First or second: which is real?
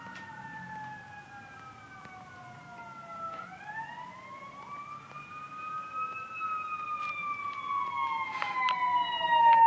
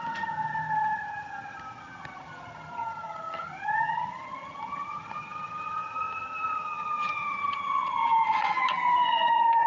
first